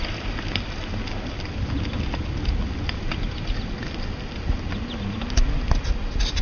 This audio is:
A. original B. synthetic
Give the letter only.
A